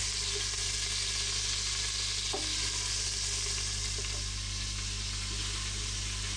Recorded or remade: recorded